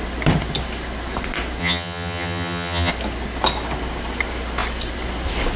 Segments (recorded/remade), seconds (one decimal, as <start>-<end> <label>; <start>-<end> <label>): 0.0-1.6 recorded; 1.6-2.9 remade; 2.9-5.6 recorded